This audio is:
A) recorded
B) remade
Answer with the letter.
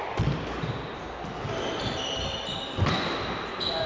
A